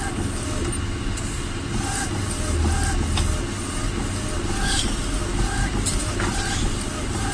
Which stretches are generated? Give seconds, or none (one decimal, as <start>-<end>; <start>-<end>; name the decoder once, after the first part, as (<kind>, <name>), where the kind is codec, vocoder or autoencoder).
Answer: none